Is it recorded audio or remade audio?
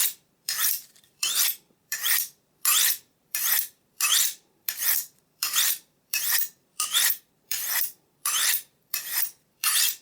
remade